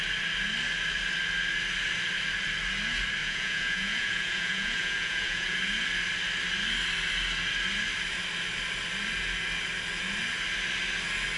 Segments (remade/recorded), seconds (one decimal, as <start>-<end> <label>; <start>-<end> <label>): 0.0-3.2 recorded; 3.2-5.6 remade; 5.6-11.4 recorded